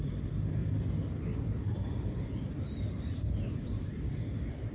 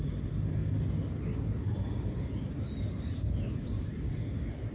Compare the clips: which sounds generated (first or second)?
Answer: first